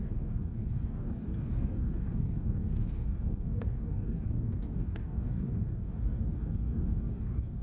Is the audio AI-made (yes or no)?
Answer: yes